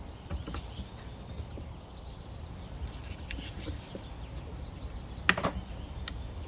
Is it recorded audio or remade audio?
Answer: recorded